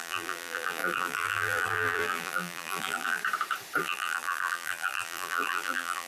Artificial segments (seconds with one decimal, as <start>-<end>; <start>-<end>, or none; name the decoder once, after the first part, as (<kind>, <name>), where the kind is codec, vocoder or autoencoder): 0.0-3.2 (vocoder, BigVGAN v2); 3.8-6.1